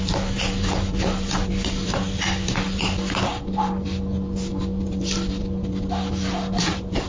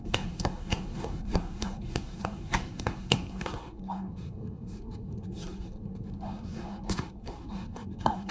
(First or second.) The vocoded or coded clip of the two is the second